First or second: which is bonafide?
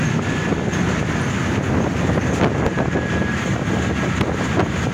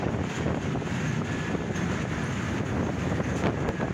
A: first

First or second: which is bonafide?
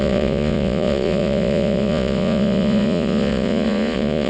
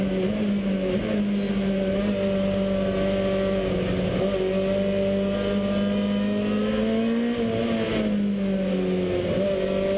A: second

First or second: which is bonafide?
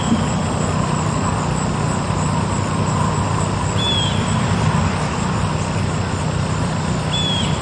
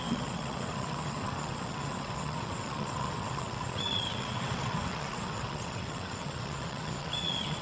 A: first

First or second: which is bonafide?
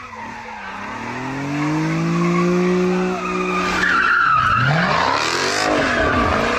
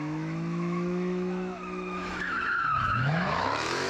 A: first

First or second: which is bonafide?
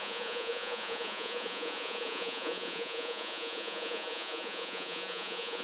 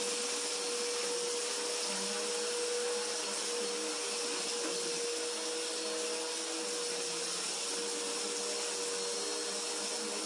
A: second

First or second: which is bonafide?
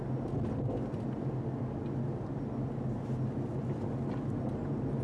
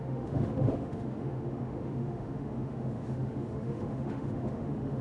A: first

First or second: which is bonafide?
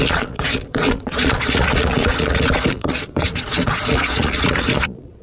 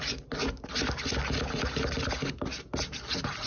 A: second